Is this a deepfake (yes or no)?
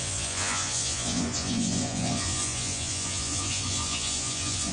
yes